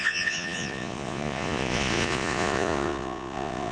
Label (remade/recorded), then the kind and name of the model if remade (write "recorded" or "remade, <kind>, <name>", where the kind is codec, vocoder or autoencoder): remade, vocoder, Vocos